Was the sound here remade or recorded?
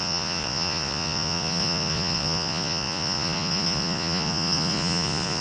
remade